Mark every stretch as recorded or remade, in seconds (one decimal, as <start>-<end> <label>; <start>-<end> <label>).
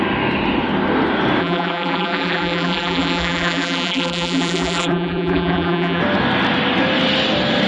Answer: 0.0-1.4 recorded; 1.4-6.0 remade; 6.0-7.7 recorded